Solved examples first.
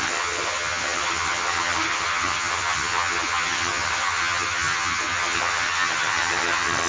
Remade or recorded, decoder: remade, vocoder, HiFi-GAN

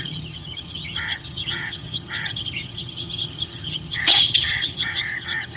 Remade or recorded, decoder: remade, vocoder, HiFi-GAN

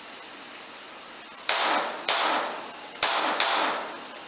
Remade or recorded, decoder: recorded